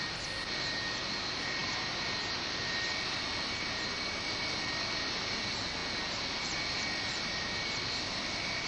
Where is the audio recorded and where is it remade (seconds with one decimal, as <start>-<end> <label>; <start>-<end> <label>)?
0.0-8.7 recorded